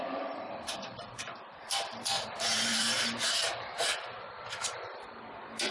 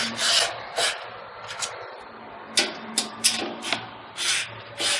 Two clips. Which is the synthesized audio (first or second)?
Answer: first